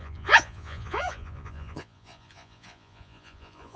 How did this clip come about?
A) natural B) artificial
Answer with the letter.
B